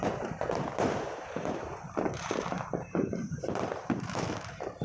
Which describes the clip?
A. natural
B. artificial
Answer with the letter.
B